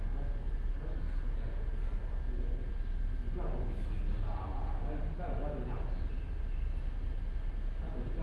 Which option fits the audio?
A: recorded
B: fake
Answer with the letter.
A